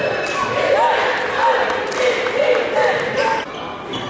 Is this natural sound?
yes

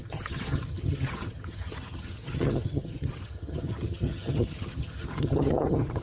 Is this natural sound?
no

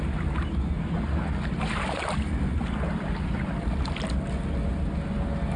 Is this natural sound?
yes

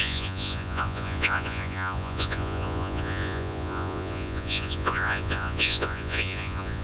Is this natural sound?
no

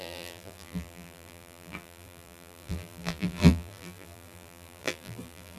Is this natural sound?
no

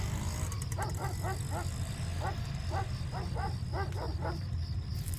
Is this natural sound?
yes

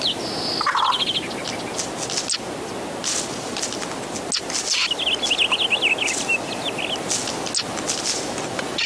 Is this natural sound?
yes